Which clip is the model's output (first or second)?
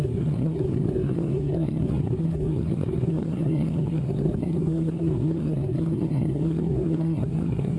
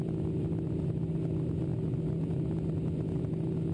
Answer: first